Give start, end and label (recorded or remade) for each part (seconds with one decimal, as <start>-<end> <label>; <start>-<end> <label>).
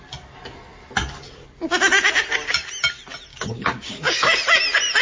0.0-3.3 recorded; 3.3-4.4 remade; 4.4-5.0 recorded